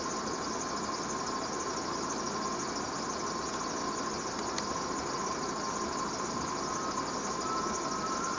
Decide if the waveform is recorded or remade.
recorded